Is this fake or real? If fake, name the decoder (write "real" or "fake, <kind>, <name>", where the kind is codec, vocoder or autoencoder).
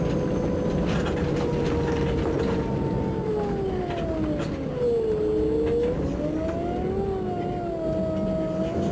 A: real